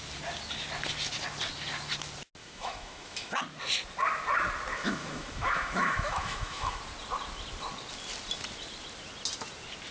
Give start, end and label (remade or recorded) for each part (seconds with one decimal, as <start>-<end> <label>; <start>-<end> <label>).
0.0-2.4 recorded; 2.4-3.4 remade; 3.4-4.7 recorded; 4.7-6.8 remade; 6.8-9.9 recorded

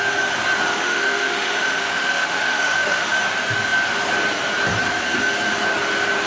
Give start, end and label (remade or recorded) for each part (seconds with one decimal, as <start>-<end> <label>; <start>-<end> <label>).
0.0-0.7 recorded; 0.7-3.2 remade; 3.2-6.3 recorded

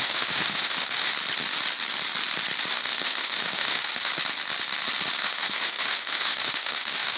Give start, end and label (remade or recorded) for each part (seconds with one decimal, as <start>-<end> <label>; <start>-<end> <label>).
0.0-1.1 remade; 1.1-2.7 recorded; 2.7-4.1 remade; 4.1-5.2 recorded; 5.2-7.2 remade

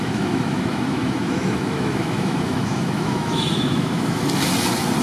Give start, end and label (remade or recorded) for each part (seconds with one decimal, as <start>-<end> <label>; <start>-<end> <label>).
0.0-4.2 remade; 4.2-5.0 recorded

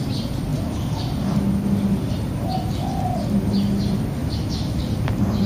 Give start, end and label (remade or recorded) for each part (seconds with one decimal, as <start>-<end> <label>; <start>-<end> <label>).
0.0-4.2 recorded; 4.2-4.8 remade; 4.8-5.5 recorded